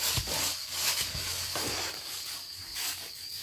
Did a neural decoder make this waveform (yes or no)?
yes